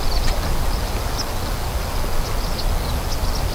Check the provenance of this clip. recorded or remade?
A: recorded